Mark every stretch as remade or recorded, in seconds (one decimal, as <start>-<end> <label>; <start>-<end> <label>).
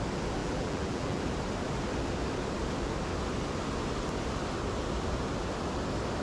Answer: 0.0-0.4 recorded; 0.4-1.2 remade; 1.2-6.2 recorded